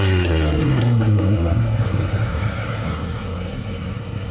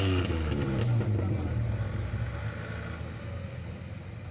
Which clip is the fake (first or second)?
first